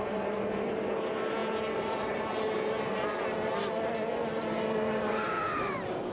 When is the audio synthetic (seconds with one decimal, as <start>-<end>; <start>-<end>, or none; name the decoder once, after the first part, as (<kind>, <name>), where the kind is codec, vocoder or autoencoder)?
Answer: none